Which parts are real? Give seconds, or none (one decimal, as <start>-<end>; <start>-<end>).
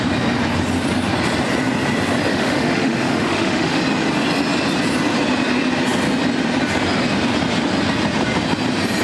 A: 0.0-2.3; 3.8-9.0